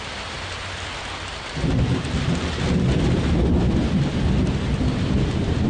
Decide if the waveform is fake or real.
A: real